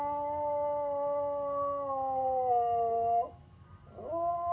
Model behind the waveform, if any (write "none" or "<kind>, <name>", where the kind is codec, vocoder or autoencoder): none